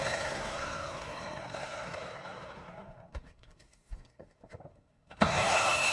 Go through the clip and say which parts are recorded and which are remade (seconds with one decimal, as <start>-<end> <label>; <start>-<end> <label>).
0.0-5.9 remade

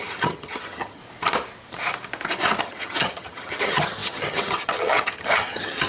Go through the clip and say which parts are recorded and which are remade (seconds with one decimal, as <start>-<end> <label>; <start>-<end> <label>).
0.0-1.0 remade; 1.0-2.6 recorded; 2.6-5.9 remade

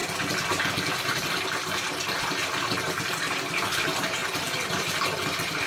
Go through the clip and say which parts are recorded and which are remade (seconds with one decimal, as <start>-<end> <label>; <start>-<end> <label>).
0.0-2.8 recorded; 2.8-4.2 remade; 4.2-4.8 recorded; 4.8-5.7 remade

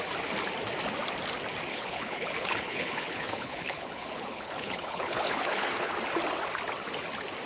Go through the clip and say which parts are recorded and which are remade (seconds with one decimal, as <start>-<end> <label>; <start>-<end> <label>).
0.0-1.7 recorded; 1.7-5.9 remade; 5.9-7.5 recorded

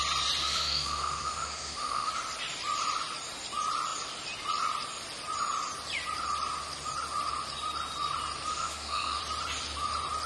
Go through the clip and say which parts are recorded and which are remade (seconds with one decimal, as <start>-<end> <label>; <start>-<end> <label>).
0.0-0.4 recorded; 0.4-2.1 remade; 2.1-8.5 recorded; 8.5-9.2 remade; 9.2-10.3 recorded

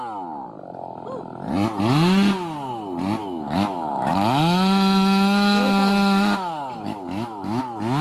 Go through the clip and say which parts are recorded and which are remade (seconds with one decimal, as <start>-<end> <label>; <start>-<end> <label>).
0.0-3.2 recorded; 3.2-7.6 remade; 7.6-8.0 recorded

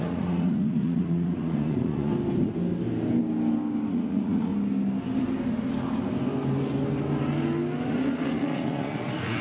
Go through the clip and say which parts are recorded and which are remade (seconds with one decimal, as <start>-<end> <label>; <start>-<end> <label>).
0.0-2.1 remade; 2.1-3.9 recorded; 3.9-4.5 remade; 4.5-7.9 recorded; 7.9-9.4 remade

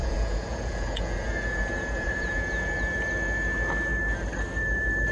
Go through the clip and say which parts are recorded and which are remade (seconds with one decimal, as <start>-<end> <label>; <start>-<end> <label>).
0.0-2.7 remade; 2.7-5.1 recorded